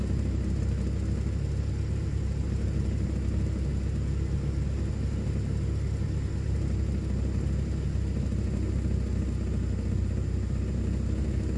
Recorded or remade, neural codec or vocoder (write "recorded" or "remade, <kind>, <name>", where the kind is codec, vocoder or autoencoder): recorded